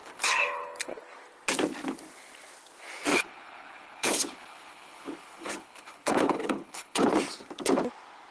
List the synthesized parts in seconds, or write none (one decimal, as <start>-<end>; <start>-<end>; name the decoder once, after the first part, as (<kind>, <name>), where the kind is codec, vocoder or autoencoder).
0.0-1.0 (codec, HILCodec); 3.1-7.1

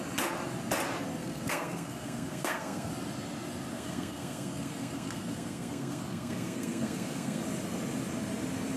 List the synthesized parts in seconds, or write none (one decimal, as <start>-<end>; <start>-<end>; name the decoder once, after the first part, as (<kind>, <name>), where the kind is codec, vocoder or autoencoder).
1.2-2.9 (codec, SNAC); 3.7-7.4

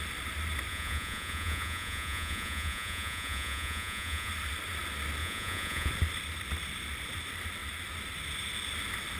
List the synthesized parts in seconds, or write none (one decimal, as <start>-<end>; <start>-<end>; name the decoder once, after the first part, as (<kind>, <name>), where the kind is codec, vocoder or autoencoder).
0.7-4.3 (vocoder, Vocos); 5.2-5.9

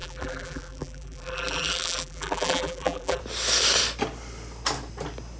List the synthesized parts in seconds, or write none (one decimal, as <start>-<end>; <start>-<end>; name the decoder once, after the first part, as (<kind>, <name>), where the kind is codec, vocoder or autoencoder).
0.0-3.2 (vocoder, BigVGAN v2)

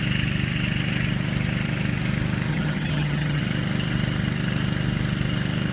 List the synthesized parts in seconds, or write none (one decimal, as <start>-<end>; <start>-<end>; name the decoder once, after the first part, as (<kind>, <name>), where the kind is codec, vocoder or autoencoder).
2.5-3.4 (vocoder, HiFi-GAN)

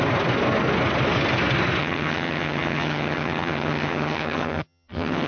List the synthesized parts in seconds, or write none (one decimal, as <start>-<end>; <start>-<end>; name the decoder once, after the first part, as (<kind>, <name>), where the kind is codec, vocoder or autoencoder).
1.8-5.3 (vocoder, HiFi-GAN)